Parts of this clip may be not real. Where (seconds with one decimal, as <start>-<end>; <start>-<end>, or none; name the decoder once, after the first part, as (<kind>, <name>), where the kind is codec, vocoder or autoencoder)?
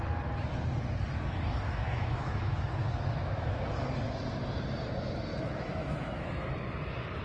1.8-3.7 (autoencoder, DAC-VAE); 5.3-6.5